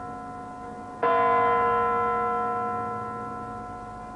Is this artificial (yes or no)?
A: no